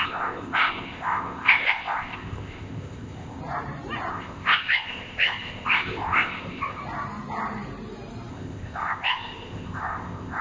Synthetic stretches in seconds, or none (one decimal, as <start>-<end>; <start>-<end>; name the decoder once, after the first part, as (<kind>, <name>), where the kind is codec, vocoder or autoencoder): 0.0-3.4 (codec, ZipCodec); 4.1-6.8; 8.3-10.4